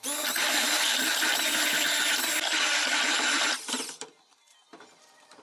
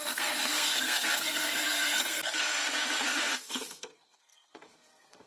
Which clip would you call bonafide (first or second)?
first